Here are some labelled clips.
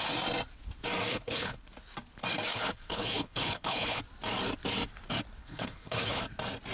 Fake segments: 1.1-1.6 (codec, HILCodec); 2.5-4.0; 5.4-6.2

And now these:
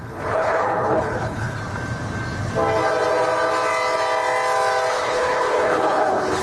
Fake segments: 0.0-1.6 (codec, HILCodec); 4.9-6.4

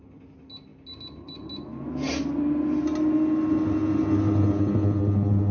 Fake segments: none